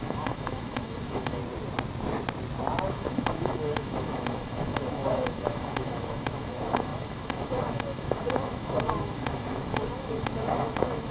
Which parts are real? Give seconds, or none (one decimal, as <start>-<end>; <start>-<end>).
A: 1.4-2.9